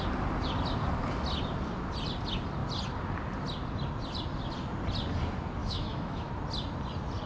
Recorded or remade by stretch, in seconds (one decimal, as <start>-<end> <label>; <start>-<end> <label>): 0.0-5.6 recorded; 5.6-6.3 remade; 6.3-7.3 recorded